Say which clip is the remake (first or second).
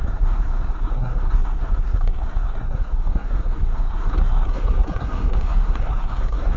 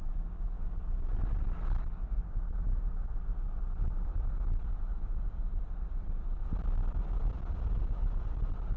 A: first